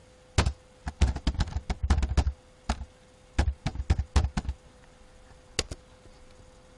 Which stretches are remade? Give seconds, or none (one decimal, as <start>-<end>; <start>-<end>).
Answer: none